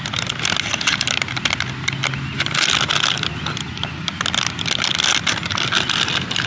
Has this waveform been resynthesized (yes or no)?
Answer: no